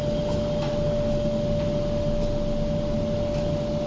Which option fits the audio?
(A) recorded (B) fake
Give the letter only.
A